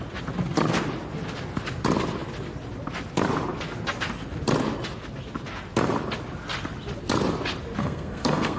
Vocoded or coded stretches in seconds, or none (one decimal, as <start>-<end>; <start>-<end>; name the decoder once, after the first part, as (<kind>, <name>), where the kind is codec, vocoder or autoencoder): 7.8-8.6 (codec, SNAC)